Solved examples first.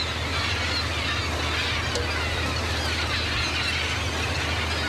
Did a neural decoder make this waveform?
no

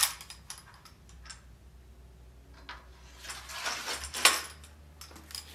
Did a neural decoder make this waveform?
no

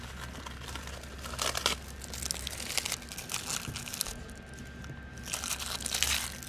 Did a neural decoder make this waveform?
no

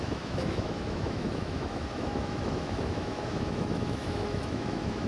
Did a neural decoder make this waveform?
yes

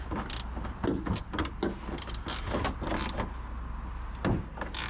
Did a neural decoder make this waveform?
no